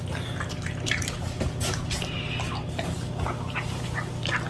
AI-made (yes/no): no